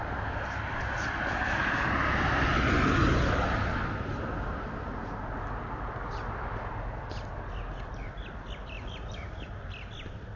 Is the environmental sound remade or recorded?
recorded